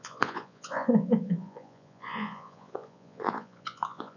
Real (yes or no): no